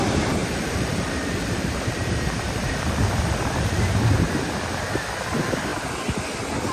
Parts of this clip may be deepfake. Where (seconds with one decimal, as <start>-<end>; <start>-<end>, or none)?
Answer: 0.4-3.9